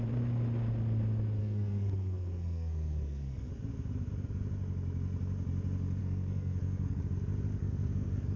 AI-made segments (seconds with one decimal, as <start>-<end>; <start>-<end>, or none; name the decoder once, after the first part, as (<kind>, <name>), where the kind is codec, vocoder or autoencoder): 1.4-3.5 (codec, SNAC); 6.0-7.0; 7.6-8.4